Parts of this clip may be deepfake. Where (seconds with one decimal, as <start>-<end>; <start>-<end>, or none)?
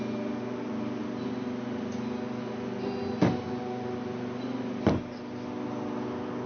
none